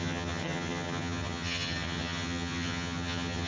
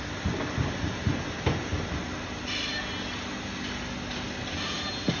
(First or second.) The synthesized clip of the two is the first